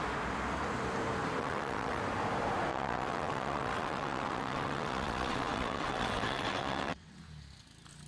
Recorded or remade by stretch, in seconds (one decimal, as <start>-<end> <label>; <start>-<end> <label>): 0.0-1.4 recorded; 1.4-2.0 remade; 2.0-2.7 recorded; 2.7-7.2 remade; 7.2-8.1 recorded